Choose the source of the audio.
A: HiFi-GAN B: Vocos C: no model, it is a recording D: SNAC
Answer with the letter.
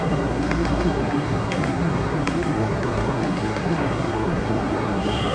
D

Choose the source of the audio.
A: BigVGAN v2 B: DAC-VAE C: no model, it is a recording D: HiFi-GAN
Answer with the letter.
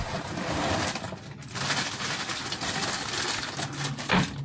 C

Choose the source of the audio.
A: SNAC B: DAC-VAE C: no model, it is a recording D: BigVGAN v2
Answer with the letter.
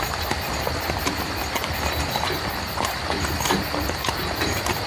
C